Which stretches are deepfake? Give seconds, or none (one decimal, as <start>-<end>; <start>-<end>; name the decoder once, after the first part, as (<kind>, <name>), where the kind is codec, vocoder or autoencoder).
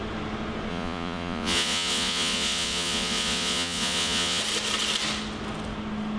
0.7-4.4 (vocoder, Vocos)